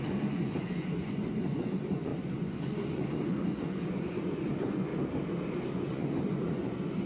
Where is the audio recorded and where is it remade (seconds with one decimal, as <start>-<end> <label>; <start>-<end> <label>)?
0.0-4.9 remade; 4.9-5.7 recorded; 5.7-7.1 remade